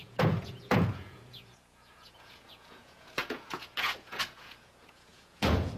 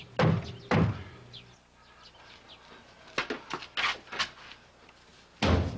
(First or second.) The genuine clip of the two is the second